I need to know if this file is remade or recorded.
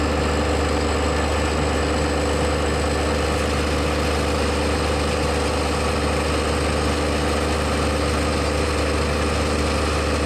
recorded